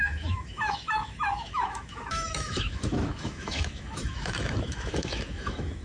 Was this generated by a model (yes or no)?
yes